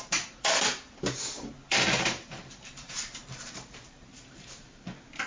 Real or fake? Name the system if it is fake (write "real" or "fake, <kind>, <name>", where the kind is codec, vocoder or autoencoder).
fake, vocoder, BigVGAN v2